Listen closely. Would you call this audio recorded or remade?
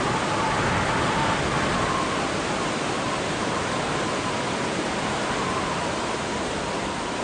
recorded